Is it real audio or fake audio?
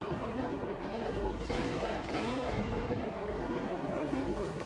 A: fake